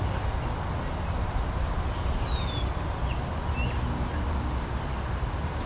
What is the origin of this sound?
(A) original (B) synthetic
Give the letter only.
A